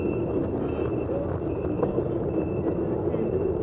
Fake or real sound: real